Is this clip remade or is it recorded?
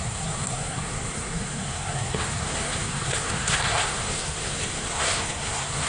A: remade